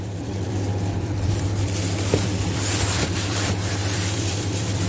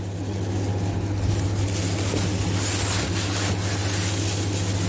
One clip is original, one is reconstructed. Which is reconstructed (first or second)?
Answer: first